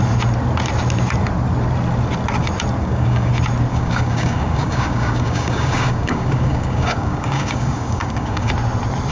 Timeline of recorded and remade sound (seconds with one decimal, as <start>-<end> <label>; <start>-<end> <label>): 0.0-2.8 recorded; 2.8-3.3 remade; 3.3-3.7 recorded; 3.7-8.5 remade; 8.5-9.1 recorded